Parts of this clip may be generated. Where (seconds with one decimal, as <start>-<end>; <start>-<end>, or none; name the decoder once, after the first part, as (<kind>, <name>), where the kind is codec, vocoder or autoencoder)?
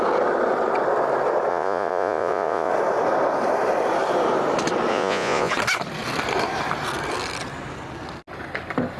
1.5-2.7 (vocoder, Vocos); 4.9-5.5